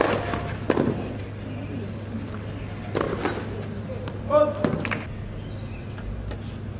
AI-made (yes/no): no